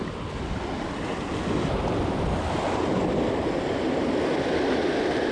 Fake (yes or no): no